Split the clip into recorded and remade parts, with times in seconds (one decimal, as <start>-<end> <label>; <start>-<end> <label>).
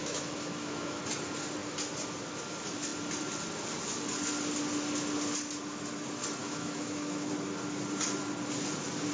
0.0-1.0 remade; 1.0-6.4 recorded; 6.4-7.3 remade; 7.3-9.1 recorded